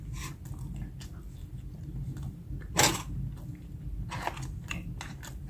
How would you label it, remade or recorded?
recorded